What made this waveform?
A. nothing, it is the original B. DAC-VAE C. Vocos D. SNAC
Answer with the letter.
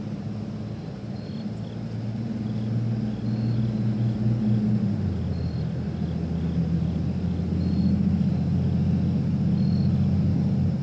A